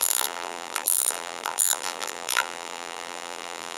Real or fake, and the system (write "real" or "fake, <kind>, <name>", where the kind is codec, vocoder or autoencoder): fake, vocoder, BigVGAN v2